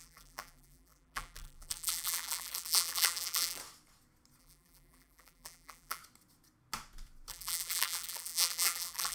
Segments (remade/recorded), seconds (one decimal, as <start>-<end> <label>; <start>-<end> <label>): 0.0-3.6 remade; 3.6-4.4 recorded; 4.4-6.0 remade; 6.0-7.3 recorded; 7.3-9.1 remade